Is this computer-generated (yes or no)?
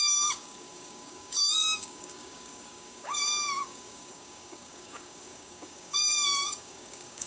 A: yes